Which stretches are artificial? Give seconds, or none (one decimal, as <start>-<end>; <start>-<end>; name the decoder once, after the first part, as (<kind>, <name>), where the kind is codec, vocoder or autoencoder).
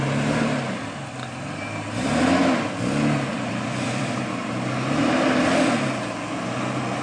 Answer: 3.3-4.2 (vocoder, BigVGAN v2)